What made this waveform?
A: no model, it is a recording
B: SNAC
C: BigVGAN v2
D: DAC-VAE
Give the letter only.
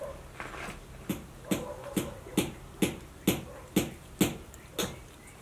A